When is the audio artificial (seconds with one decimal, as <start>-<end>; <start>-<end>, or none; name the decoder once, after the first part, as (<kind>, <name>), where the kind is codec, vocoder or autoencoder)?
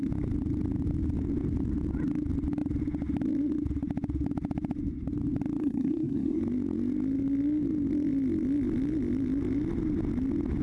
5.6-6.4 (codec, SNAC)